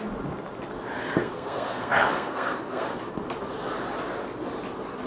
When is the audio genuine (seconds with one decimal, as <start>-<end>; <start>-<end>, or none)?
0.0-1.2; 3.0-5.1